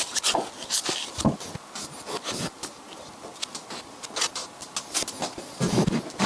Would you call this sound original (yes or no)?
yes